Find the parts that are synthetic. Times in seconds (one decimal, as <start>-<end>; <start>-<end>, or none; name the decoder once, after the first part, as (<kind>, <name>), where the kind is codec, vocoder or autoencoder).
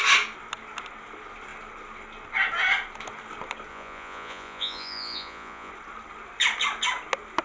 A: 3.7-5.7 (vocoder, Vocos)